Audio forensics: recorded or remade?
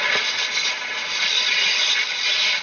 recorded